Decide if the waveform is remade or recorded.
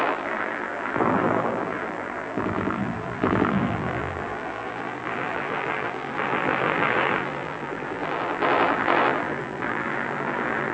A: remade